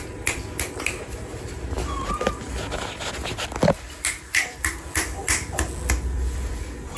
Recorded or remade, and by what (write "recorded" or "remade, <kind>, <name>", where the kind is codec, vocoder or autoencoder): recorded